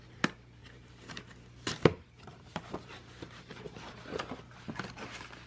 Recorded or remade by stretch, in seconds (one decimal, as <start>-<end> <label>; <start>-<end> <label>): 0.0-0.6 recorded; 0.6-1.2 remade; 1.2-2.3 recorded; 2.3-4.6 remade; 4.6-5.5 recorded